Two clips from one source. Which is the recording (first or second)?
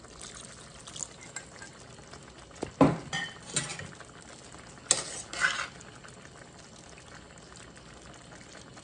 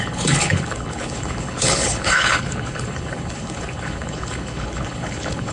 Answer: first